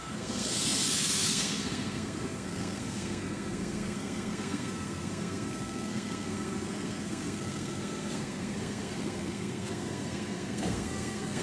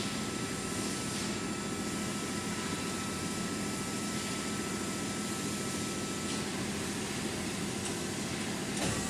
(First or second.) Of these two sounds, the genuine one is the second